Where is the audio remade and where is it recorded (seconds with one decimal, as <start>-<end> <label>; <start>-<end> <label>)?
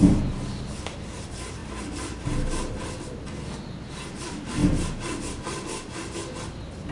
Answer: 0.0-6.9 recorded